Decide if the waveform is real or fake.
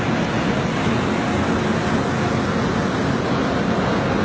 real